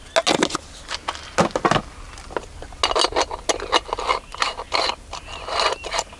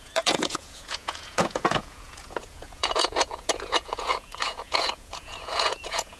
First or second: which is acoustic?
first